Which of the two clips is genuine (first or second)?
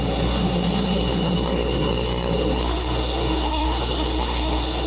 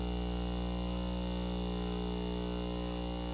second